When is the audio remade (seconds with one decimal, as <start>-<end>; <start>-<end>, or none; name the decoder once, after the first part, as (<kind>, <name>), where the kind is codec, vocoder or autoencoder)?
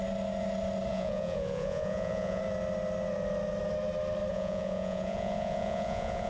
0.9-2.4 (vocoder, Vocos); 4.3-6.3